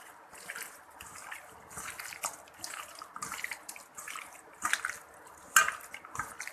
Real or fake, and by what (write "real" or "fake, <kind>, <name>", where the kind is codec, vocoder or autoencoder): real